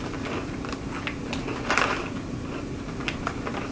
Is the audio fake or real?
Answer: real